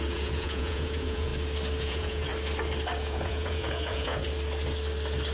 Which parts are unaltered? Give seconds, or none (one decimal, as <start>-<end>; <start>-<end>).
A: 1.3-1.8; 2.3-3.0; 4.2-5.3